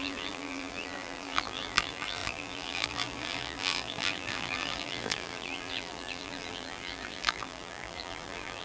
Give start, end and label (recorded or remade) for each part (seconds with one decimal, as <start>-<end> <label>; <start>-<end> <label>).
0.0-8.6 remade